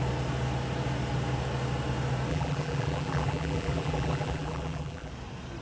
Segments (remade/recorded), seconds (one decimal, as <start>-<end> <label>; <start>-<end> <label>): 0.0-2.3 recorded; 2.3-5.1 remade; 5.1-5.6 recorded